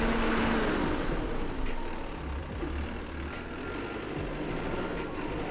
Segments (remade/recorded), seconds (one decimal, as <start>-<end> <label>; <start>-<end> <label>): 0.0-5.5 recorded